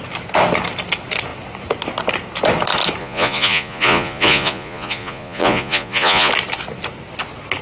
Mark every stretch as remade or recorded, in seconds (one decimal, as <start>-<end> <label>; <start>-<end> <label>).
0.0-3.0 recorded; 3.0-6.3 remade; 6.3-7.6 recorded